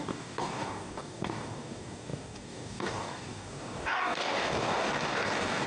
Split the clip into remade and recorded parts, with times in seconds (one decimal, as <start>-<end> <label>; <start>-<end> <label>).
0.0-5.7 remade